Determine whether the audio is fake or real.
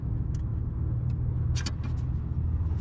real